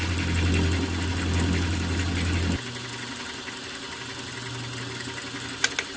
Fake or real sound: real